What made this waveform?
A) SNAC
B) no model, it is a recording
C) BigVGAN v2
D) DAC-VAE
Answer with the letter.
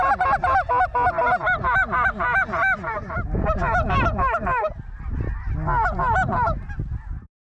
B